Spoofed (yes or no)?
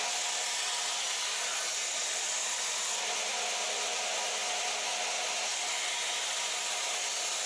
no